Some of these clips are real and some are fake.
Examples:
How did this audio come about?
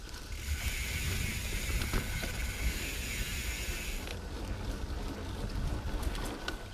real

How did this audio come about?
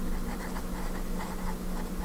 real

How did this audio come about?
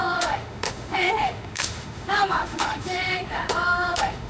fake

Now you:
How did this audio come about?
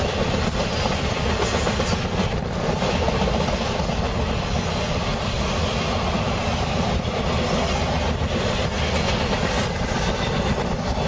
real